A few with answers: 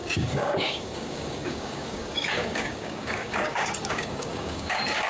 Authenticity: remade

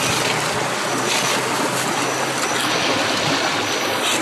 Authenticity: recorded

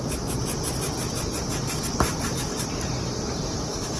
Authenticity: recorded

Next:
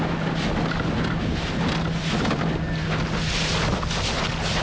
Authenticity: recorded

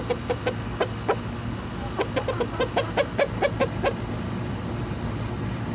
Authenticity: recorded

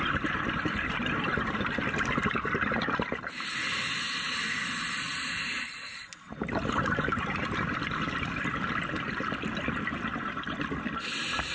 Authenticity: recorded